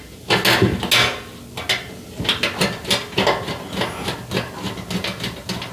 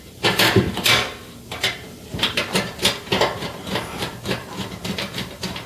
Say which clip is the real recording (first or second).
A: first